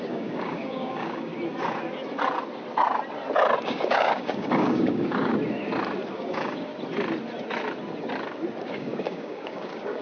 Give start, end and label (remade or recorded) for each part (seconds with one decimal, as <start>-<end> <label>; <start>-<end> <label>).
0.0-1.3 remade; 1.3-3.6 recorded; 3.6-5.3 remade; 5.3-6.1 recorded; 6.1-6.7 remade; 6.7-8.6 recorded; 8.6-10.0 remade